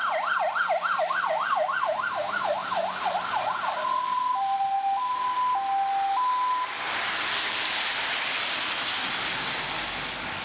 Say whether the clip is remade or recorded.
recorded